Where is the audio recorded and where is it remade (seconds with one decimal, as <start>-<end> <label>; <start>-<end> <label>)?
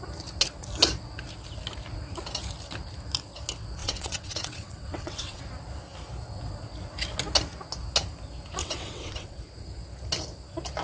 0.0-3.8 recorded; 3.8-5.4 remade; 5.4-8.6 recorded; 8.6-9.4 remade; 9.4-10.8 recorded